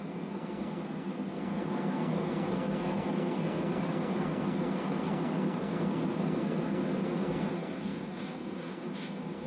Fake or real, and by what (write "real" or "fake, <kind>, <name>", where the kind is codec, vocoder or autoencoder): fake, codec, SNAC